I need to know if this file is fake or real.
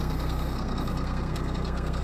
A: fake